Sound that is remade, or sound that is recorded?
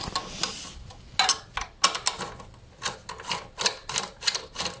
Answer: recorded